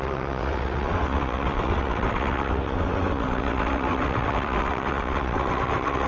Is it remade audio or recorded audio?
remade